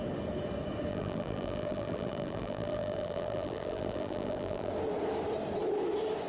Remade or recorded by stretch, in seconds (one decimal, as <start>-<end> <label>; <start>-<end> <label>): 0.0-0.9 recorded; 0.9-4.7 remade; 4.7-6.3 recorded